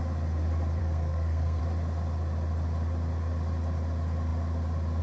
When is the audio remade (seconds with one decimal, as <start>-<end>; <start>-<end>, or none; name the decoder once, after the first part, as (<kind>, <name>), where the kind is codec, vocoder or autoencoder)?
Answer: 0.8-1.6 (codec, SNAC)